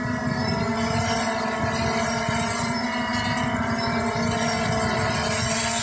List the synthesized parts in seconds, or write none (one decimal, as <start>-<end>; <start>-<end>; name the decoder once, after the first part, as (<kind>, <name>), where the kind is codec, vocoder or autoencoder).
none